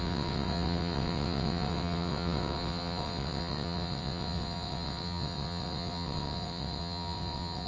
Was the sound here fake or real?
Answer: fake